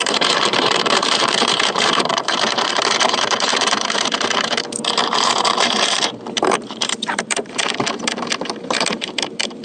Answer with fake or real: fake